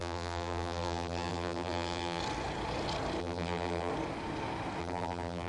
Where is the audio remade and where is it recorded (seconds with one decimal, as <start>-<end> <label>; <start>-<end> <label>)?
0.0-2.2 remade; 2.2-3.2 recorded; 3.2-3.9 remade; 3.9-4.8 recorded; 4.8-5.5 remade